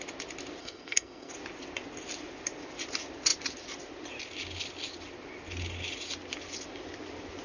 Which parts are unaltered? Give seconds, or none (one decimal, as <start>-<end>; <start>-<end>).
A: 0.0-0.6; 1.3-7.4